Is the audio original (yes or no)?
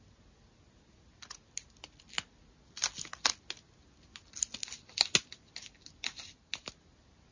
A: yes